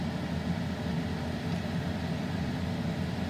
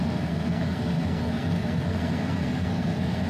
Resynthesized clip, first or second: second